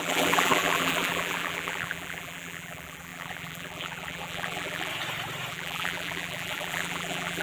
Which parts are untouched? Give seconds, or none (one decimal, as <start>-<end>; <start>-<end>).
4.9-5.5